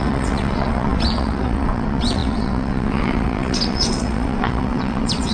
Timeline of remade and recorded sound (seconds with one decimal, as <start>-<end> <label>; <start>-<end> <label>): 0.0-5.3 remade